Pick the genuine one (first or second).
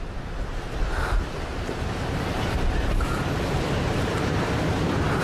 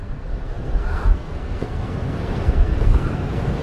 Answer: first